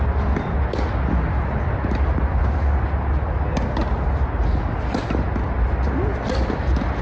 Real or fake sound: real